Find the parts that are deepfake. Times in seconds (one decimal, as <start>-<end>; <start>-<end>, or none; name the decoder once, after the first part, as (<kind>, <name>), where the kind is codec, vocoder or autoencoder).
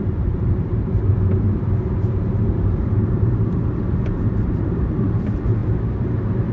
0.0-0.7 (vocoder, BigVGAN v2); 2.8-5.6